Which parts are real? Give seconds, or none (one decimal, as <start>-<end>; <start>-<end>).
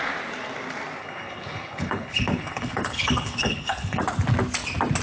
0.0-1.0; 4.0-5.0